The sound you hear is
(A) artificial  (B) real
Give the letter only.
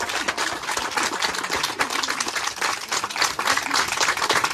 B